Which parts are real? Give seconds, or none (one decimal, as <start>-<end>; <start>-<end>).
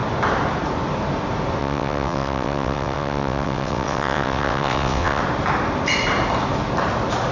0.0-1.6; 5.2-7.3